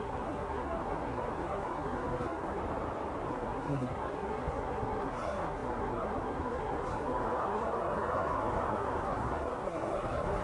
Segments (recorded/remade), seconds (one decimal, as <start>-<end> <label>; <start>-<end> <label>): 0.0-2.6 remade; 2.6-3.3 recorded; 3.3-10.4 remade

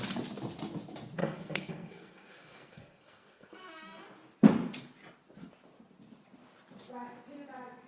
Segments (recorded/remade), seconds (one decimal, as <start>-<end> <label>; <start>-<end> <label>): 0.0-1.2 recorded; 1.2-4.0 remade; 4.0-7.9 recorded

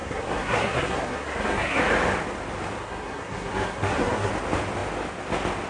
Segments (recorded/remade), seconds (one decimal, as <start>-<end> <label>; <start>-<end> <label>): 0.0-1.8 remade; 1.8-2.8 recorded; 2.8-4.3 remade; 4.3-5.7 recorded

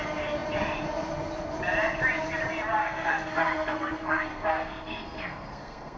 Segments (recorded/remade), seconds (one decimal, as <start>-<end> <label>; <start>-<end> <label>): 0.0-2.8 recorded; 2.8-6.0 remade

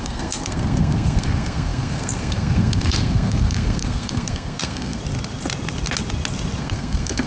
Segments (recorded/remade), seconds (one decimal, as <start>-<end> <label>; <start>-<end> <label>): 0.0-5.0 remade; 5.0-6.6 recorded; 6.6-7.3 remade